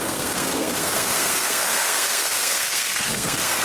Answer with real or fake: fake